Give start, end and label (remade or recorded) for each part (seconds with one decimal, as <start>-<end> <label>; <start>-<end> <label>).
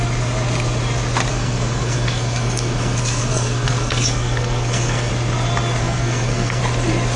0.0-1.3 recorded; 1.3-5.1 remade; 5.1-5.8 recorded; 5.8-6.6 remade; 6.6-7.2 recorded